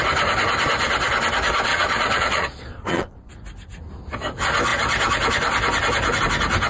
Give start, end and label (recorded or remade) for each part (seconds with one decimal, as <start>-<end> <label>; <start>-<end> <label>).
0.0-1.7 recorded; 1.7-3.3 remade; 3.3-6.7 recorded